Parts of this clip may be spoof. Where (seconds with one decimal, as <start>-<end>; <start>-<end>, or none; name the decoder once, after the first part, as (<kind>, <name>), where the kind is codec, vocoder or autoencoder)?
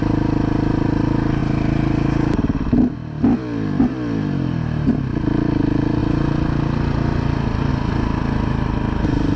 none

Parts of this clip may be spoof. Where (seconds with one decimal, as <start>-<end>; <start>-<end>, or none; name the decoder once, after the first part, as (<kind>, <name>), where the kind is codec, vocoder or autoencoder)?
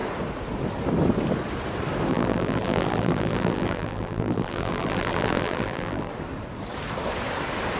2.1-6.1 (vocoder, BigVGAN v2)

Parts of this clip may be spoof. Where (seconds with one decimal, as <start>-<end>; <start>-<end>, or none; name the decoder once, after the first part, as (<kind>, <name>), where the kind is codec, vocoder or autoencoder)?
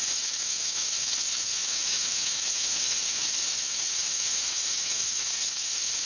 0.0-6.1 (autoencoder, DAC-VAE)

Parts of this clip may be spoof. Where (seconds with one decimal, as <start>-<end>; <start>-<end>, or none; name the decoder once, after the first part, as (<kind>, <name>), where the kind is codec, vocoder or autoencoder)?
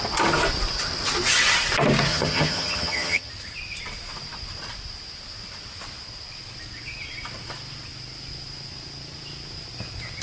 2.1-3.3 (vocoder, HiFi-GAN)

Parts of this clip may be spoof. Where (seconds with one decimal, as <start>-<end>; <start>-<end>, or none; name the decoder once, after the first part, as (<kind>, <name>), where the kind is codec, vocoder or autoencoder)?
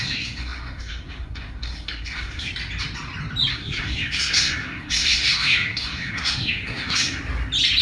0.0-2.5 (codec, SNAC); 3.5-7.2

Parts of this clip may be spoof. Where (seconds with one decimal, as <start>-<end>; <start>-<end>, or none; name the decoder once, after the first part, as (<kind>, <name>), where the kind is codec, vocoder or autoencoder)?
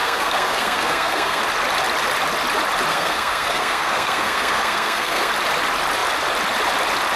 0.0-1.4 (codec, SNAC); 2.9-5.3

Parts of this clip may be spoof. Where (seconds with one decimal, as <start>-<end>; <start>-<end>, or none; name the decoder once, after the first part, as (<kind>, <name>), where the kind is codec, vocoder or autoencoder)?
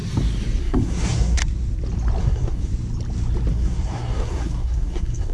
0.6-1.4 (codec, SNAC); 2.2-2.7; 3.5-5.3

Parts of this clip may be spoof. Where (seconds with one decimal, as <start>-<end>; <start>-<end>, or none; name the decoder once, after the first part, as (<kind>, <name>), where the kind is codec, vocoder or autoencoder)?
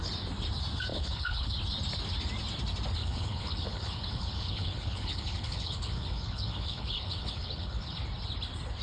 0.9-1.5 (codec, HILCodec); 3.0-8.0